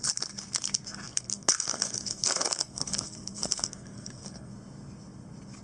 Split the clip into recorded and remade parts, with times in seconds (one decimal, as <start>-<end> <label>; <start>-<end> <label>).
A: 0.0-1.1 recorded; 1.1-4.5 remade; 4.5-5.6 recorded